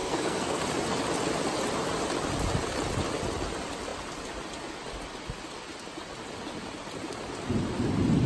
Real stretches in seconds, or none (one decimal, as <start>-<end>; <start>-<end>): 0.6-8.3